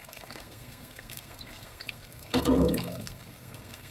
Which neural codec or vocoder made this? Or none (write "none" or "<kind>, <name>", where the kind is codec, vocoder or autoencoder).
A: codec, SNAC